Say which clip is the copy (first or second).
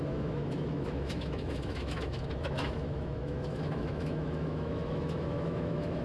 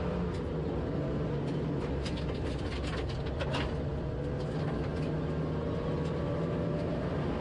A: first